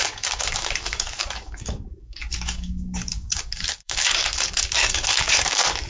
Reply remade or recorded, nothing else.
remade